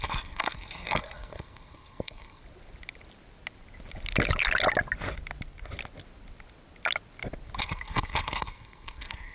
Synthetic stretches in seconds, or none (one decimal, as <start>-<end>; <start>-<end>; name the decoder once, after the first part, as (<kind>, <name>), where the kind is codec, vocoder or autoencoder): 0.0-2.4 (codec, SNAC); 7.6-9.3